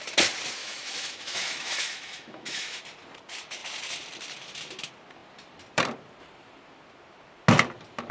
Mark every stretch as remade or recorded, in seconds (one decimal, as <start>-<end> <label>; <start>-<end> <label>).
0.0-0.6 recorded; 0.6-2.8 remade; 2.8-8.1 recorded